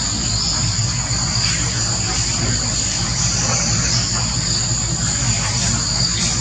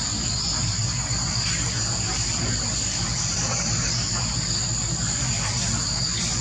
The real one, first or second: first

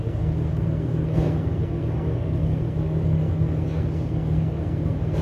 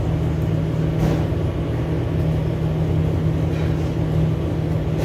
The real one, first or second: second